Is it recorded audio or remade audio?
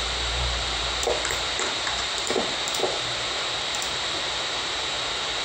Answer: remade